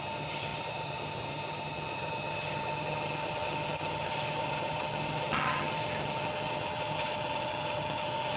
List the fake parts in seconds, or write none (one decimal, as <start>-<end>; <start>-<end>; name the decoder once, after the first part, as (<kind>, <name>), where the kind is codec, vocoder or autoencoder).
0.0-8.4 (vocoder, HiFi-GAN)